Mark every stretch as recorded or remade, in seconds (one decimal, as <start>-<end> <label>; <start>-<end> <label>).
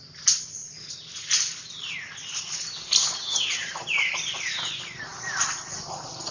0.0-6.3 recorded